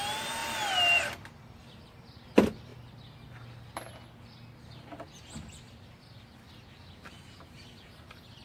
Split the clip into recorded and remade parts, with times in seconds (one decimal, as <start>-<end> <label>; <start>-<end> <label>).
0.0-8.4 recorded